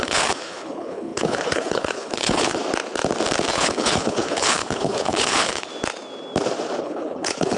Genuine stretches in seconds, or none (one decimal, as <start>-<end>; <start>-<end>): 2.6-3.5; 5.7-6.8